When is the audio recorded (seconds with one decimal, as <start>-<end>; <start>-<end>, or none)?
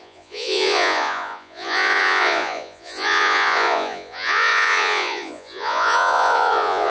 none